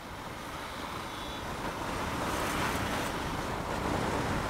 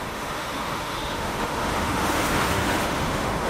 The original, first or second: first